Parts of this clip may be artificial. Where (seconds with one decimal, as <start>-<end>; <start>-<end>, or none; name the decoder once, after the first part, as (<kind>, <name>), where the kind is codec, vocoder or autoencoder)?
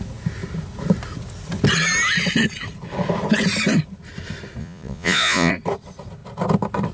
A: 4.6-5.5 (vocoder, Vocos)